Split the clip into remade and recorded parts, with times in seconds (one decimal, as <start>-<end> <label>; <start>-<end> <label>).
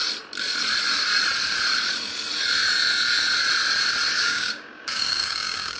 0.0-4.2 recorded; 4.2-5.8 remade